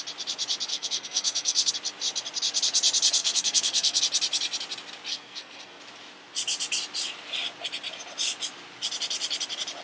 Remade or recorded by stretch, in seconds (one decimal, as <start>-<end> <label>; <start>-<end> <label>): 0.0-0.7 recorded; 0.7-1.7 remade; 1.7-3.2 recorded; 3.2-4.0 remade; 4.0-5.1 recorded; 5.1-5.8 remade; 5.8-9.8 recorded